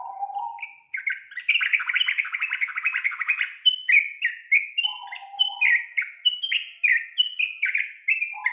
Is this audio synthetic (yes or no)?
no